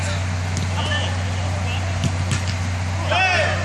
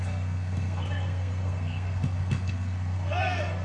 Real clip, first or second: first